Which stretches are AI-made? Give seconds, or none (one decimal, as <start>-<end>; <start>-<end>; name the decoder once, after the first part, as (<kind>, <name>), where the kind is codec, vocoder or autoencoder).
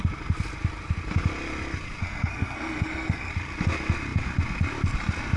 2.0-3.3 (codec, SNAC)